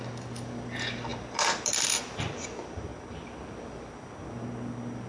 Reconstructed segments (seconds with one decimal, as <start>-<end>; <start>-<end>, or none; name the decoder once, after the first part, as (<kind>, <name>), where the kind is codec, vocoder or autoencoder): none